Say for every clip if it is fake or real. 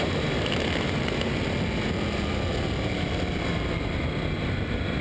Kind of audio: real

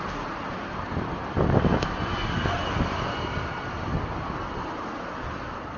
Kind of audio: real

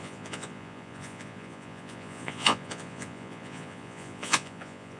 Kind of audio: fake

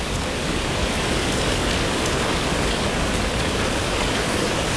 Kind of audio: fake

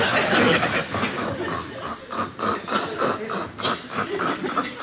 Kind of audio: real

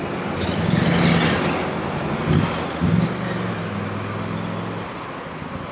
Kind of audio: real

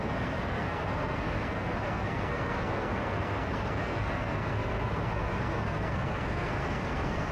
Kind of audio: fake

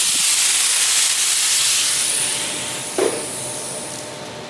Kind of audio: real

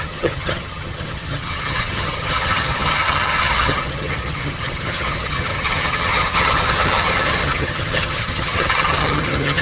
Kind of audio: fake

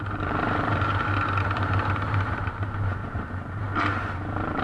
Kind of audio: fake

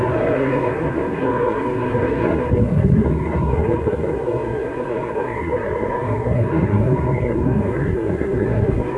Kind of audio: fake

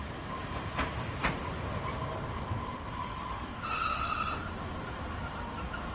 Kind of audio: real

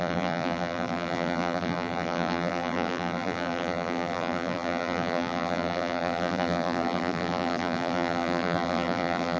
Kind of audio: fake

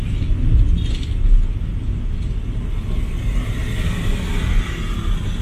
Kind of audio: real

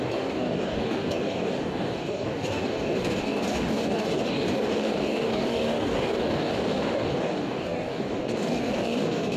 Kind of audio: fake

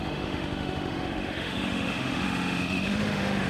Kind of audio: fake